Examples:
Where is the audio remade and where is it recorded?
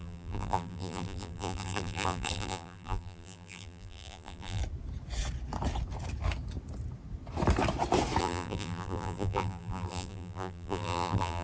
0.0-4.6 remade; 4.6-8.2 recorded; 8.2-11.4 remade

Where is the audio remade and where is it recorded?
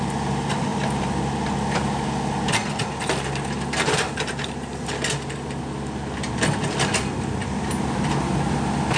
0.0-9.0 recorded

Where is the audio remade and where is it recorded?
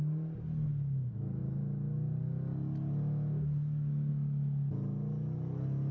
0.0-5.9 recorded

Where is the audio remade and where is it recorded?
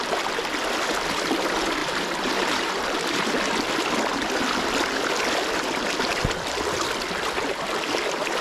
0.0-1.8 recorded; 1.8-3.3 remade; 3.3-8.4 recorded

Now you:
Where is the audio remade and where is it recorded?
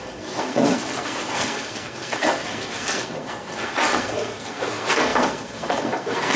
0.0-6.4 remade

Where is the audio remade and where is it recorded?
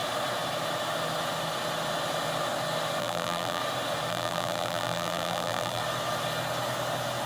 0.0-3.0 recorded; 3.0-3.6 remade; 3.6-4.1 recorded; 4.1-5.8 remade; 5.8-7.3 recorded